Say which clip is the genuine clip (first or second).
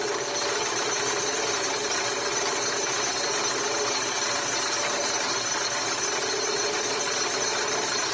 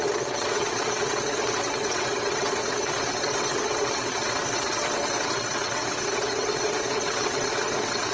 first